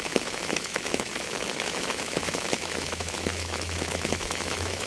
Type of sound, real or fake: fake